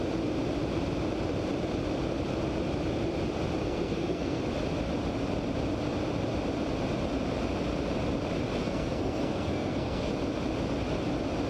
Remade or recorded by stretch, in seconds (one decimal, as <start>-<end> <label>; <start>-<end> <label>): 0.0-3.6 recorded; 3.6-4.4 remade; 4.4-8.6 recorded; 8.6-10.1 remade; 10.1-11.5 recorded